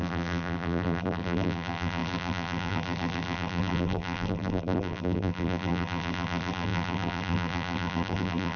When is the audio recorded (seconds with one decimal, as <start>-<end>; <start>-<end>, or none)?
none